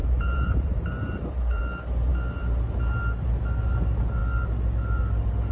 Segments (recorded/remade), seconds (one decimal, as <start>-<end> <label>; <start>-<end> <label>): 0.0-1.6 remade; 1.6-5.5 recorded